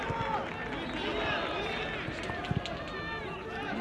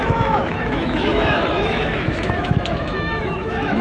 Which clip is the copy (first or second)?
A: second